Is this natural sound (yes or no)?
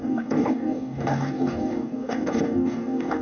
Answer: no